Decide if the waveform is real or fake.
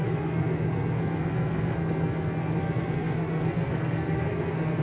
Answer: fake